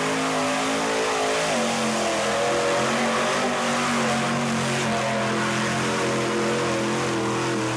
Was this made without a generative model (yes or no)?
yes